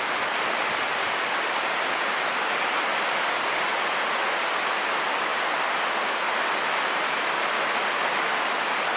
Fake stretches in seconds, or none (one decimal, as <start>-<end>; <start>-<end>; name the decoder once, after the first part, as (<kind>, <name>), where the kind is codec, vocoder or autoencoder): none